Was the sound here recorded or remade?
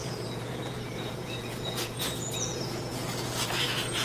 remade